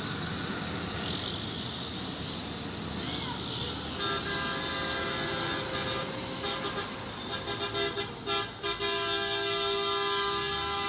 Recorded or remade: recorded